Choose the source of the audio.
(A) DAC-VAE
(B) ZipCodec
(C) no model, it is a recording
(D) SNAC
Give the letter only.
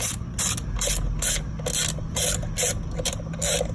C